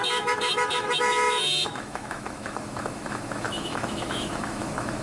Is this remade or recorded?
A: remade